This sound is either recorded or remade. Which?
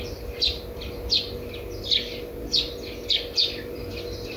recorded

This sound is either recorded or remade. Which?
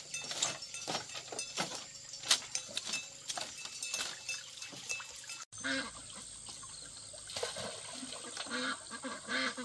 recorded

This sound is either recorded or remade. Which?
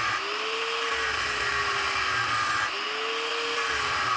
recorded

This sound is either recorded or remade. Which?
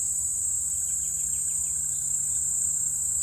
remade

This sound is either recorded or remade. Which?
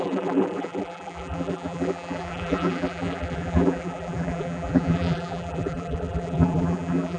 remade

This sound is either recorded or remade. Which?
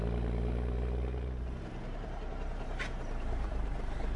remade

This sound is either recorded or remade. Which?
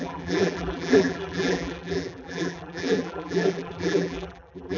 remade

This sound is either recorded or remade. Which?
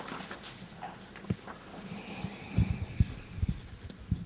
recorded